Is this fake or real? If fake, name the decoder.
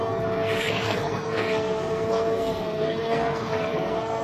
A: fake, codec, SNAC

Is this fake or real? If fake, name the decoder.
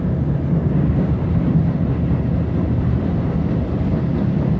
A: real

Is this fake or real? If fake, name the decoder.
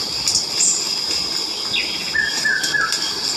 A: real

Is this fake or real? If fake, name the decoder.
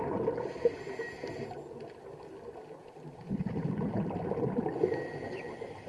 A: real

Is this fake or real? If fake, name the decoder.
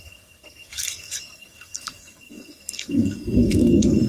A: fake, codec, SNAC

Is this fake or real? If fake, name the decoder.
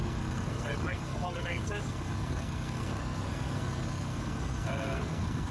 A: fake, codec, SNAC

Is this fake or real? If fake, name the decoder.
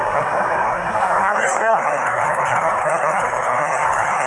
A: fake, codec, SNAC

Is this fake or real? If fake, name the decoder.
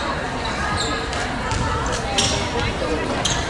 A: real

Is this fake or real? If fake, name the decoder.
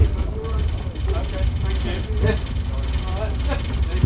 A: real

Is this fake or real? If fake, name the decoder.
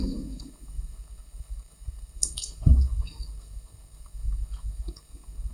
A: fake, codec, SNAC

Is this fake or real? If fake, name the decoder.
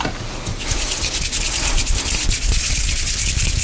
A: real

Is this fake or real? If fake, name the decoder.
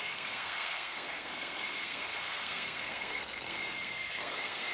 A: fake, codec, SNAC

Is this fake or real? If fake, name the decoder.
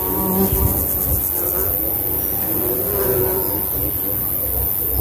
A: real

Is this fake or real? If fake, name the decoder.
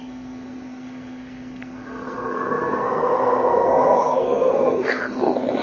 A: fake, codec, SNAC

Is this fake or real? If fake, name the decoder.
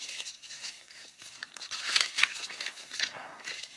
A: fake, codec, SNAC